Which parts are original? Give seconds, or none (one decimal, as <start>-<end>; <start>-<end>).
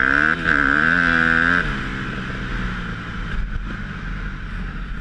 0.0-5.0